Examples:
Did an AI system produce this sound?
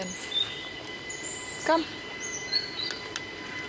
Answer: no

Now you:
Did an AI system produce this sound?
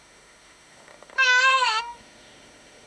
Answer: yes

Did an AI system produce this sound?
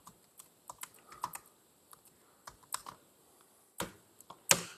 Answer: no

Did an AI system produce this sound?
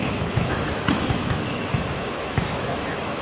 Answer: yes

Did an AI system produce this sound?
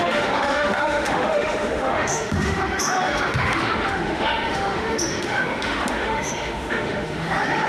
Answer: yes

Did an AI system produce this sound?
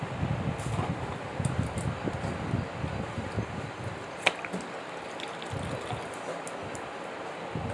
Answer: no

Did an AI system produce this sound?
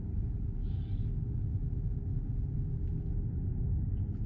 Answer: no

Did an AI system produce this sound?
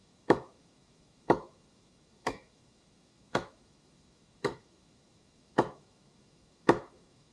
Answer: yes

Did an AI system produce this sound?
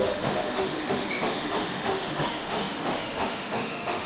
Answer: yes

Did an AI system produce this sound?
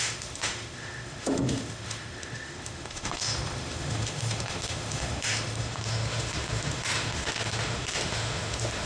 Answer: yes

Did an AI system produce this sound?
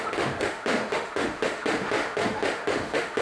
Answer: yes